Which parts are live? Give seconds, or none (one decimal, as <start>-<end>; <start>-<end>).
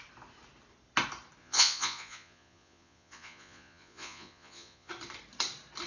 0.0-1.4; 4.9-5.9